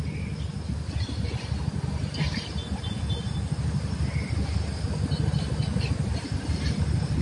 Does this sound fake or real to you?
real